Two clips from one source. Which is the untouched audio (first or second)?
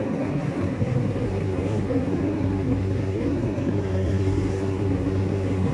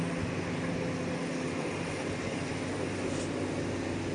second